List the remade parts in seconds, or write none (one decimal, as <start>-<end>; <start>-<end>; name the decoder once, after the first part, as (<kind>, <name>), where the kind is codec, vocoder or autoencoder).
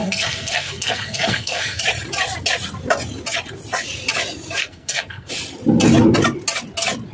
0.0-1.8 (codec, SNAC); 4.6-5.3